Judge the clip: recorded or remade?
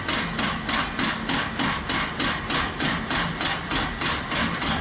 recorded